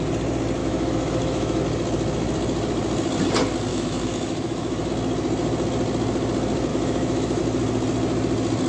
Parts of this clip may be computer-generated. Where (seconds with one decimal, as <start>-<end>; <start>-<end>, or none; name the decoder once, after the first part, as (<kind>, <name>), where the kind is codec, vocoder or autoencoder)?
0.6-1.6 (autoencoder, DAC-VAE); 3.7-4.9; 6.7-7.4

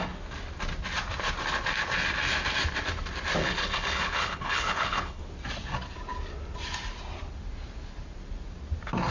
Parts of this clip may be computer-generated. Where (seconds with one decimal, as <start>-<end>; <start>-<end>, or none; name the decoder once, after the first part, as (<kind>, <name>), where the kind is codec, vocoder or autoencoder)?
3.4-5.2 (codec, HILCodec)

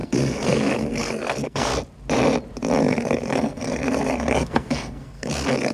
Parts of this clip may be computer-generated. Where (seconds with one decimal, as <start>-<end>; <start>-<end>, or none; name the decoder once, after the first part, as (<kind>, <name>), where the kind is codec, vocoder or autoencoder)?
0.0-1.7 (codec, SNAC); 2.8-5.7

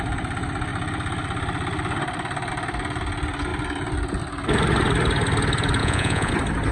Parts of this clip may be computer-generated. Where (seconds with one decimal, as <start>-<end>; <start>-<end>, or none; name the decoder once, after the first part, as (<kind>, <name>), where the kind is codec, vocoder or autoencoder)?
5.8-6.3 (vocoder, Vocos)

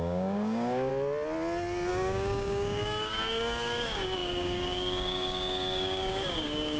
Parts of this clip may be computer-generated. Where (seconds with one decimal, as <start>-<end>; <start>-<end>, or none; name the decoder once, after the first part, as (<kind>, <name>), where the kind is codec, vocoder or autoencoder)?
0.0-0.9 (codec, DAC); 1.9-6.8

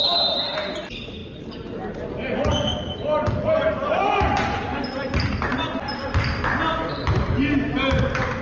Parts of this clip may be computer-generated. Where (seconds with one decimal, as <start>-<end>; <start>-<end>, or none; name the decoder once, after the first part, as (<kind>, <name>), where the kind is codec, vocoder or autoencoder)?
none

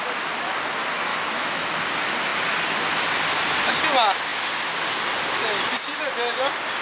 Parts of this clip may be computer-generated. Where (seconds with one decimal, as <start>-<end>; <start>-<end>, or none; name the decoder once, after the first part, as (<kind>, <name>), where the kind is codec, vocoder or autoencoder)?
1.1-1.8 (autoencoder, DAC-VAE)

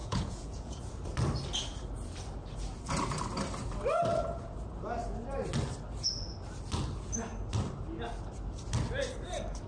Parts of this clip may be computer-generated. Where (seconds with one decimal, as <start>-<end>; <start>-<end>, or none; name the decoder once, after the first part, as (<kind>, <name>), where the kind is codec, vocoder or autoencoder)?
0.0-0.8 (vocoder, Vocos)